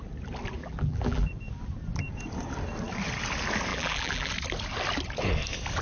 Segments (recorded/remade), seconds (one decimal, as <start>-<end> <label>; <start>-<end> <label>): 0.0-0.6 recorded; 0.6-1.3 remade; 1.3-3.7 recorded; 3.7-4.3 remade; 4.3-5.8 recorded